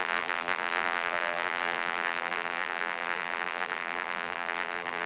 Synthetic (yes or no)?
yes